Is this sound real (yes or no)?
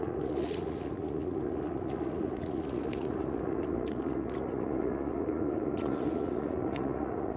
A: no